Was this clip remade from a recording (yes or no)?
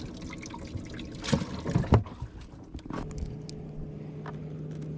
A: no